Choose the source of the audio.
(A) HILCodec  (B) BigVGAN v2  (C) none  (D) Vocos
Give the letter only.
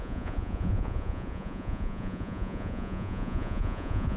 D